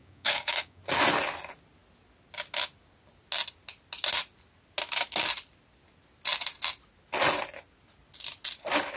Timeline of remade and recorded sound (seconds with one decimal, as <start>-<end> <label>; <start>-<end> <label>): 0.0-0.8 remade; 0.8-9.0 recorded